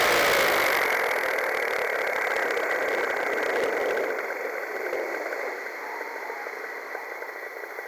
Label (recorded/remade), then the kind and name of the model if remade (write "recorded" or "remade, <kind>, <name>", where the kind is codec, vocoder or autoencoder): recorded